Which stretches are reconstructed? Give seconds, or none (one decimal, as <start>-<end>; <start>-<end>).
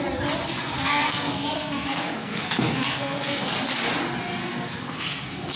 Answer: 0.6-3.5; 4.4-5.6